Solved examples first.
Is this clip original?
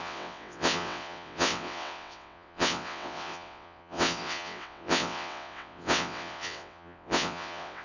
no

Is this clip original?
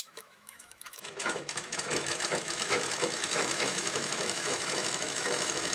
no